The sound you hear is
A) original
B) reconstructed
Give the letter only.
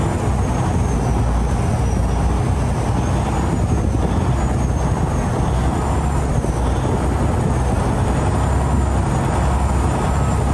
A